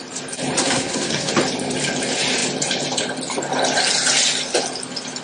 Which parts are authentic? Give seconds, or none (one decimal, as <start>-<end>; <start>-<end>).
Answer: 0.0-0.6; 1.3-5.2